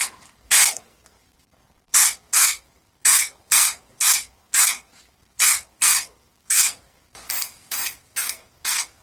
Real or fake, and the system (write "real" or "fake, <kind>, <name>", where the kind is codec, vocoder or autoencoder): fake, codec, SNAC